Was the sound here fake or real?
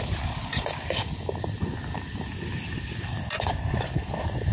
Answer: real